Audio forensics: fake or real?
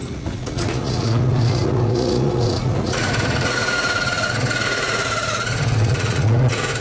fake